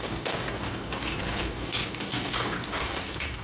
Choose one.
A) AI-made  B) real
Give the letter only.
A